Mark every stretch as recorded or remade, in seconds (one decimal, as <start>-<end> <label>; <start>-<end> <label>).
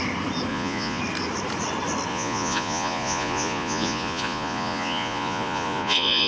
0.0-0.5 recorded; 0.5-1.0 remade; 1.0-2.1 recorded; 2.1-6.3 remade